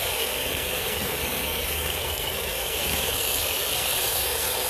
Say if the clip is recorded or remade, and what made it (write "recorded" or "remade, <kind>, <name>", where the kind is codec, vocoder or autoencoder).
remade, codec, SNAC